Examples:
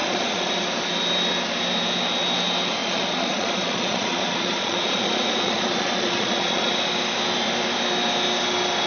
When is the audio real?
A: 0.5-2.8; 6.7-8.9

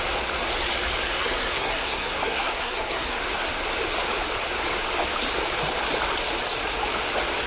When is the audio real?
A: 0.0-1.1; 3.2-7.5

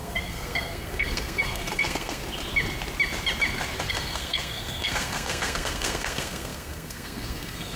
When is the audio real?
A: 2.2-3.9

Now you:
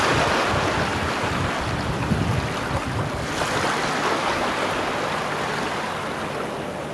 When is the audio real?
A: 0.0-6.9

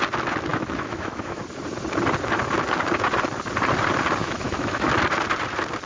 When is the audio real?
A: 0.0-0.5; 1.4-4.2; 4.9-5.9

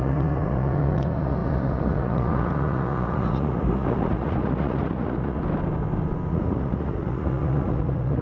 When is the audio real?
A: 5.4-6.3

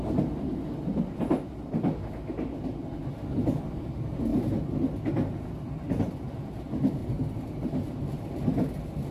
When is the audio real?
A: 0.0-9.1